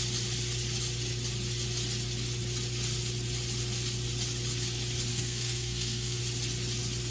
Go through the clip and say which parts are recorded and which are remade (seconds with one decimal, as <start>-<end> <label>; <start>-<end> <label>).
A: 0.0-5.1 recorded; 5.1-6.2 remade; 6.2-7.1 recorded